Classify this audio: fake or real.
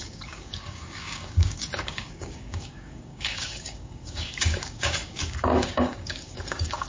fake